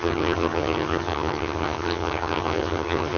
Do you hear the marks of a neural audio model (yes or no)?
yes